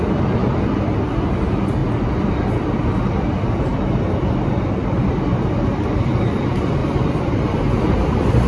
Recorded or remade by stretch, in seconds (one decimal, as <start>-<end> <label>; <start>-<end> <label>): 0.0-0.4 recorded; 0.4-1.0 remade; 1.0-1.8 recorded; 1.8-2.5 remade; 2.5-3.7 recorded; 3.7-5.1 remade; 5.1-6.8 recorded; 6.8-7.6 remade; 7.6-8.5 recorded